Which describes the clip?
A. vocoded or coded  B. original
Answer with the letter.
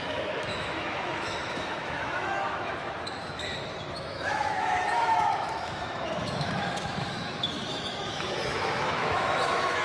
A